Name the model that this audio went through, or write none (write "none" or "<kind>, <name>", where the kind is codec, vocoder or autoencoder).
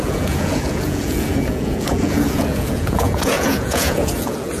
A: vocoder, Vocos